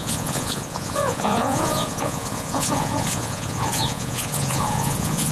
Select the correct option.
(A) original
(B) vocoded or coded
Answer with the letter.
B